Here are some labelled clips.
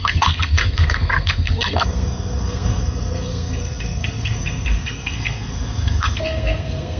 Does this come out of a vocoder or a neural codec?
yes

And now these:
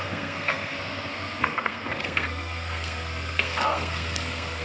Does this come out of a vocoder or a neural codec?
yes